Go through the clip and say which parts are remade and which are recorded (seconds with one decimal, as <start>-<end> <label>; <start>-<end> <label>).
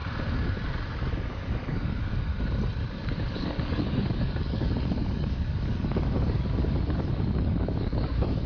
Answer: 0.0-1.1 recorded; 1.1-2.3 remade; 2.3-3.3 recorded; 3.3-8.5 remade